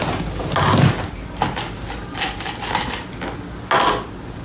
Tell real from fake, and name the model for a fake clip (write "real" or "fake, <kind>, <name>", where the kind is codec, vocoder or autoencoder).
real